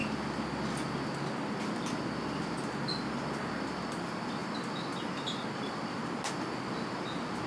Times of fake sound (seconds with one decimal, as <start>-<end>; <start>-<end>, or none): none